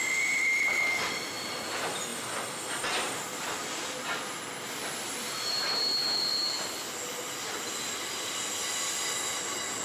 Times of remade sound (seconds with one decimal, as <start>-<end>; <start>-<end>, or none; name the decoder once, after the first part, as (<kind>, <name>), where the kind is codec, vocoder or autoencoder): none